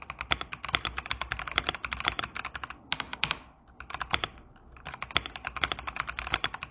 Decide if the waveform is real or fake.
real